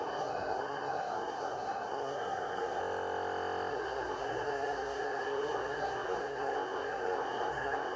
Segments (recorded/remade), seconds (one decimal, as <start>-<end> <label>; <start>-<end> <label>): 0.0-2.8 remade; 2.8-3.7 recorded; 3.7-8.0 remade